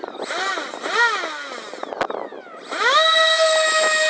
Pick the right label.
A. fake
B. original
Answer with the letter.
B